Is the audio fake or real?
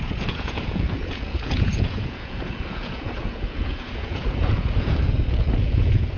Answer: fake